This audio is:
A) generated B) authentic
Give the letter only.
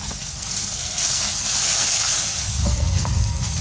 A